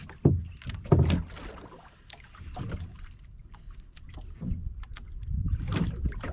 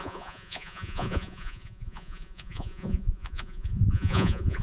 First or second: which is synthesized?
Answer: second